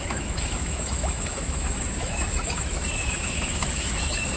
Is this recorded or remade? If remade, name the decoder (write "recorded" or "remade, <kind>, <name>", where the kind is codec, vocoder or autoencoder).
remade, autoencoder, DAC-VAE